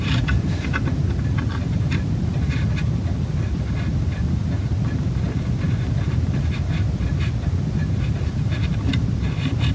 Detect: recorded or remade recorded